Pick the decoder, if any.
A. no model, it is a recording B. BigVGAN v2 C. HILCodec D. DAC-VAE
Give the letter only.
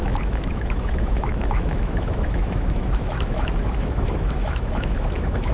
D